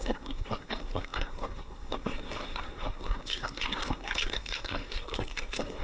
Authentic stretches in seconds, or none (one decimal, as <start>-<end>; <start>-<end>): none